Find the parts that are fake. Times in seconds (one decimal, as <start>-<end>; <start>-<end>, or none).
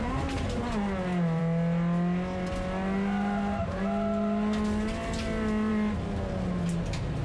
none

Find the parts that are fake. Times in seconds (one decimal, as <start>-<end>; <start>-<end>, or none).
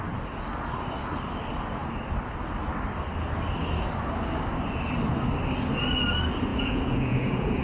6.5-7.6